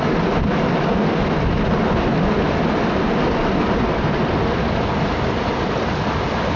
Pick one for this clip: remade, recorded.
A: recorded